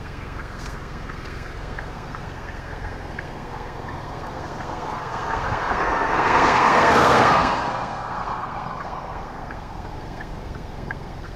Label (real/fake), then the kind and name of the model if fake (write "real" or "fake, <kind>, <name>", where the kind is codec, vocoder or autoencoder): fake, codec, SNAC